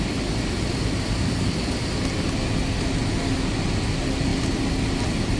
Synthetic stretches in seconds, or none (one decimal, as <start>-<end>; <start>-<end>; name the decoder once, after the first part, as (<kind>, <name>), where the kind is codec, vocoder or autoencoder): none